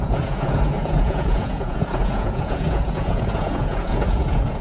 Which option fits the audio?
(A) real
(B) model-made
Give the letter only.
B